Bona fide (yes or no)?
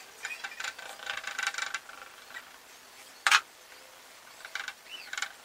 yes